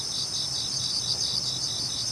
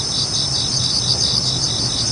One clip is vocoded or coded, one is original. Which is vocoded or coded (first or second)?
first